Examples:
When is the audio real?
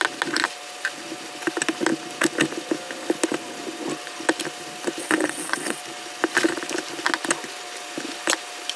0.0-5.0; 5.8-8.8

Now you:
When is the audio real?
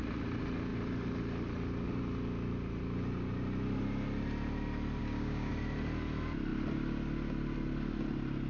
0.0-5.0; 5.5-8.5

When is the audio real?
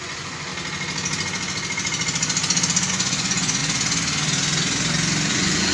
0.5-2.9; 3.6-5.3